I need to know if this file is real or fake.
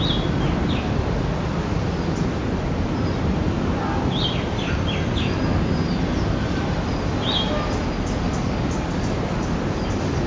real